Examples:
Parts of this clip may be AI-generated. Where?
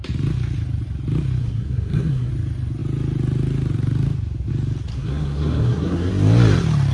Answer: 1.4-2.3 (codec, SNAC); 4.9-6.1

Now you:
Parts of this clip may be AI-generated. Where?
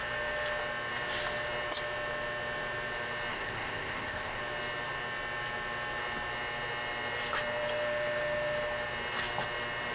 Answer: 3.3-4.4 (codec, ZipCodec)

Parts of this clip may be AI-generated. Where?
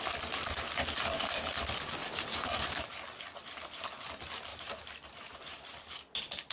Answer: 2.0-2.8 (vocoder, BigVGAN v2); 4.5-5.6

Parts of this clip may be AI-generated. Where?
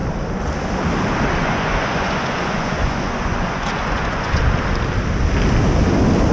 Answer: 1.4-4.4 (vocoder, Vocos)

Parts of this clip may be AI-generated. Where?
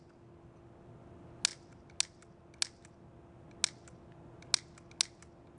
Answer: none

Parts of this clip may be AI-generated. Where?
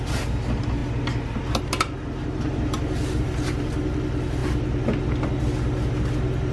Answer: none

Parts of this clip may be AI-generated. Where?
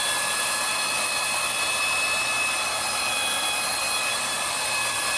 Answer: none